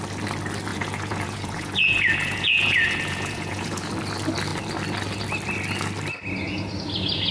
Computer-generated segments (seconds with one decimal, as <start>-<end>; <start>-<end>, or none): 0.7-3.9

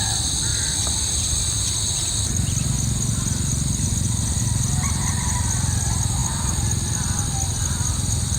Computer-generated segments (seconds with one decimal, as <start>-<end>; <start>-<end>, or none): none

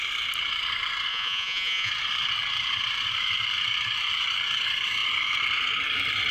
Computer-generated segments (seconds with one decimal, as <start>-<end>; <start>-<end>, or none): 1.1-1.9

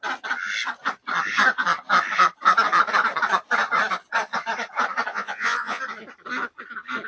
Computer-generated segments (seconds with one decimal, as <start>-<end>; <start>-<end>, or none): 5.1-5.8

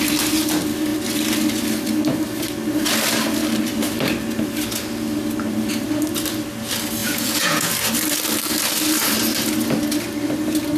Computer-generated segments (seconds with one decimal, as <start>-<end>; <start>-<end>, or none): 7.0-7.7

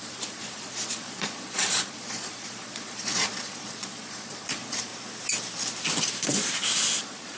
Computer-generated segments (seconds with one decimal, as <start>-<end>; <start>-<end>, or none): 0.0-4.9; 7.0-7.4